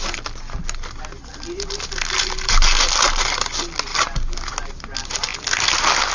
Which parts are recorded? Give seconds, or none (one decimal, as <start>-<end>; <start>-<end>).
0.0-6.1

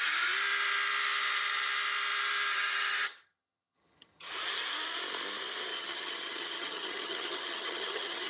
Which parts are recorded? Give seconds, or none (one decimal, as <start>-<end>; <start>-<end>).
0.0-2.5; 4.3-5.7

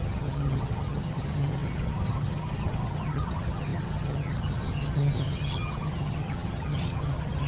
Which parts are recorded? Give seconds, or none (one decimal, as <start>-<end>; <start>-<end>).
none

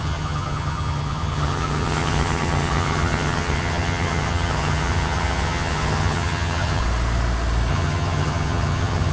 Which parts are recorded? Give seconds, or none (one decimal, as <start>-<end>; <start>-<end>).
6.8-7.7